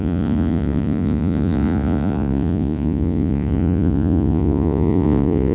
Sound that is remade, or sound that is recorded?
remade